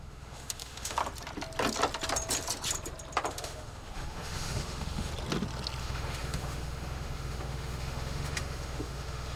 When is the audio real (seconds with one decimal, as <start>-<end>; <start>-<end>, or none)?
1.0-3.3; 5.1-5.8